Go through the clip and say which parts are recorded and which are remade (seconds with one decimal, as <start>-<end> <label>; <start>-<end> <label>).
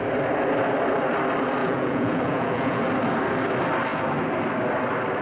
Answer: 0.0-1.6 recorded; 1.6-2.8 remade; 2.8-5.2 recorded